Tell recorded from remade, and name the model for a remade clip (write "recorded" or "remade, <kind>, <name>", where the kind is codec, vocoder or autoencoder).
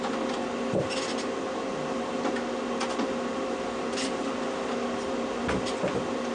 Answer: recorded